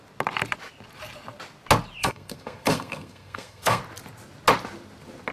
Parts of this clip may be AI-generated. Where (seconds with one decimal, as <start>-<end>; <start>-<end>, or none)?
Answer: 2.0-3.8